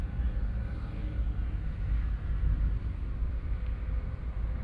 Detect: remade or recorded recorded